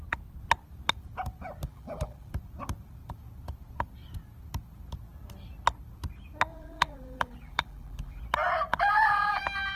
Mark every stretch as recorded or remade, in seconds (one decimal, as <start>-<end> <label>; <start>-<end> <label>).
0.0-1.6 recorded; 1.6-2.3 remade; 2.3-6.5 recorded; 6.5-8.2 remade; 8.2-8.7 recorded; 8.7-9.4 remade; 9.4-9.8 recorded